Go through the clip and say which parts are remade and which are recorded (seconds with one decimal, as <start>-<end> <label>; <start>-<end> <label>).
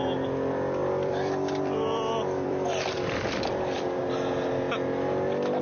0.0-0.8 recorded; 0.8-4.0 remade; 4.0-5.6 recorded